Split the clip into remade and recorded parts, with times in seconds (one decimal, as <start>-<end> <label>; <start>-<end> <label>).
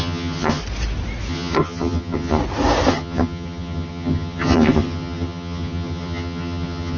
0.0-0.6 remade; 0.6-1.3 recorded; 1.3-2.4 remade; 2.4-2.9 recorded; 2.9-7.0 remade